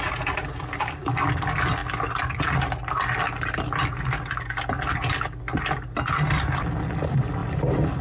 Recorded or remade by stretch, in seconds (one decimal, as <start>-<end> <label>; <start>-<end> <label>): 0.0-7.4 recorded; 7.4-8.0 remade